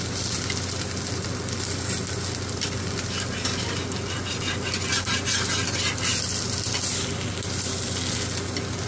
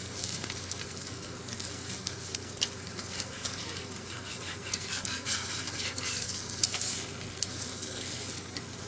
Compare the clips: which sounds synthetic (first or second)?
second